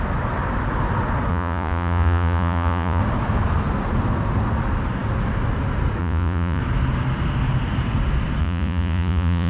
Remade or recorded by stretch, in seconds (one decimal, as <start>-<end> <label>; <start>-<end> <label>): 0.0-1.3 recorded; 1.3-3.0 remade; 3.0-6.0 recorded; 6.0-6.6 remade; 6.6-8.4 recorded; 8.4-9.5 remade

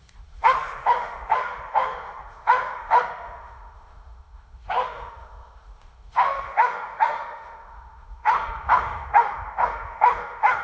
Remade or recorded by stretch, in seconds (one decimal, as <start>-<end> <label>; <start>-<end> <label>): 0.0-10.6 remade

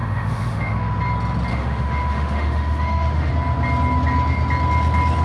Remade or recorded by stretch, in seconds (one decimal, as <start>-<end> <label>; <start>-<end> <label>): 0.0-1.0 remade; 1.0-1.5 recorded; 1.5-3.3 remade; 3.3-5.2 recorded

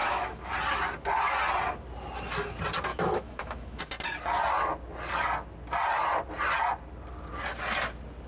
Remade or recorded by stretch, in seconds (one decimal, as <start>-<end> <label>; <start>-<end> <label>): 0.0-0.5 remade; 0.5-2.9 recorded; 2.9-3.8 remade; 3.8-8.3 recorded

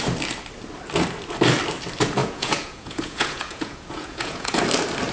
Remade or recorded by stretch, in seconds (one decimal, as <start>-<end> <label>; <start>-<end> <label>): 0.0-2.2 recorded; 2.2-4.6 remade; 4.6-5.1 recorded

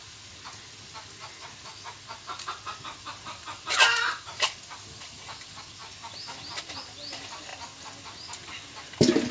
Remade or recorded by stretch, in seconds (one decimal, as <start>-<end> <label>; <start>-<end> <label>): 0.0-4.3 recorded; 4.3-5.2 remade; 5.2-5.8 recorded; 5.8-6.7 remade; 6.7-9.3 recorded